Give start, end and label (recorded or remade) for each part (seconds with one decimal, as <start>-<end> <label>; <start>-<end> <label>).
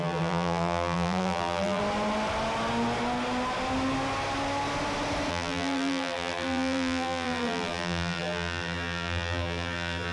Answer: 0.0-1.8 remade; 1.8-5.3 recorded; 5.3-10.1 remade